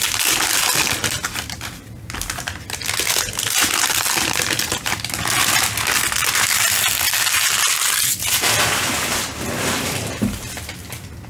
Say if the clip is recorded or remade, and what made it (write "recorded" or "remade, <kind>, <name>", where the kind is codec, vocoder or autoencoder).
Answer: recorded